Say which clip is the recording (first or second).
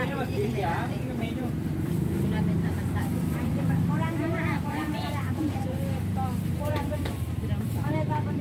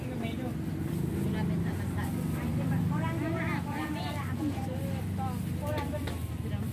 second